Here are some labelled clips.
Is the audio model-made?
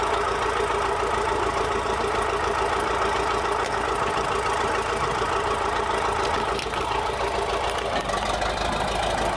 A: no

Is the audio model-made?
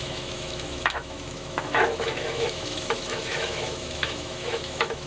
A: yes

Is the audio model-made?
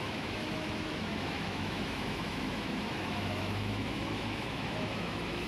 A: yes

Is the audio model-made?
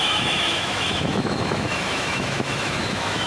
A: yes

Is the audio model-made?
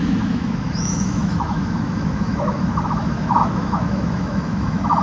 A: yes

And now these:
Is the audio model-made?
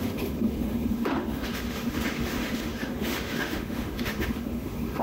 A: yes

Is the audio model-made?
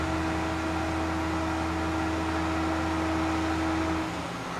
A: no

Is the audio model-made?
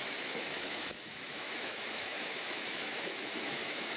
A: yes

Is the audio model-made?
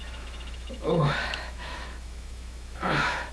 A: yes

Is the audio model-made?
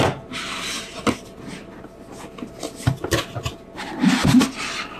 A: no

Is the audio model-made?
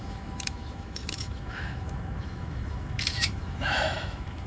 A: yes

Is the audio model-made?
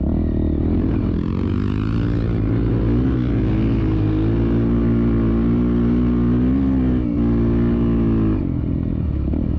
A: no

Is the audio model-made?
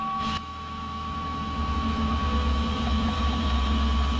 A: yes